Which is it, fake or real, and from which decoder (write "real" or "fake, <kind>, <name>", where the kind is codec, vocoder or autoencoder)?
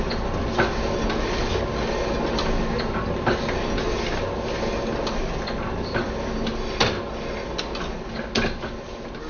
real